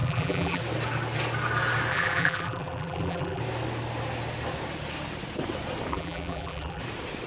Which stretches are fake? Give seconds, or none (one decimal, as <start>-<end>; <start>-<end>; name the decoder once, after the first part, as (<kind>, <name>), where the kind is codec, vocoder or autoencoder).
0.0-0.6 (vocoder, BigVGAN v2); 1.9-3.4; 5.9-6.8